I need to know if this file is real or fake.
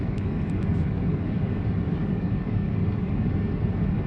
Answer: fake